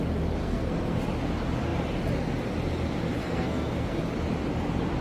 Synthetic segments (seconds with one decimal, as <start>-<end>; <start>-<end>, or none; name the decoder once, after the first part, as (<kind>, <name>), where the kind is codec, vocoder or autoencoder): 0.4-1.0 (codec, SNAC); 3.2-4.0